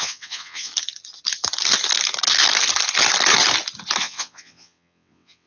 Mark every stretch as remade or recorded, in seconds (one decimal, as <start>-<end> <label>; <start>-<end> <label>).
0.0-0.7 remade; 0.7-4.0 recorded; 4.0-5.5 remade